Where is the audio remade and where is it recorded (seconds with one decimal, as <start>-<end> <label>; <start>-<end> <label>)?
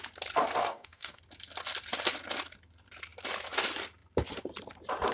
0.0-0.6 recorded; 0.6-1.2 remade; 1.2-5.1 recorded